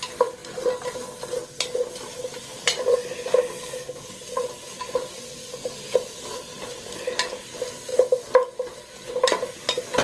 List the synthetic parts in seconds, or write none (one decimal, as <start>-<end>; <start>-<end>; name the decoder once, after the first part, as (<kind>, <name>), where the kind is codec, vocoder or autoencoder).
none